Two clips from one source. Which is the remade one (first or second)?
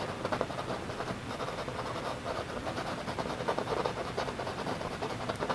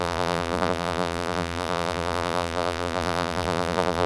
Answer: second